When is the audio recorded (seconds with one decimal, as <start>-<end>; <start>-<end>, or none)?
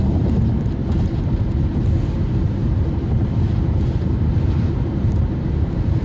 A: 0.8-3.6